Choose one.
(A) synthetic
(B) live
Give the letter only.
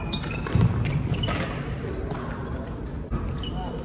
B